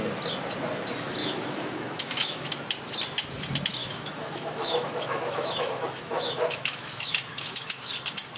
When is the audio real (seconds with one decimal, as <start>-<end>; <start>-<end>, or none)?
0.0-1.2; 2.5-3.8; 7.9-8.4